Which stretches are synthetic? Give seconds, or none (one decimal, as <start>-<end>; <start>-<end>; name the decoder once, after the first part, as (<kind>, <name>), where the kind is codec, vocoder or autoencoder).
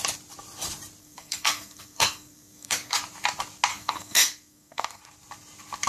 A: 1.0-3.0 (codec, SNAC); 3.7-5.0